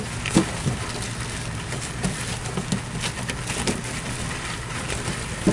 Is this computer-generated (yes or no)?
no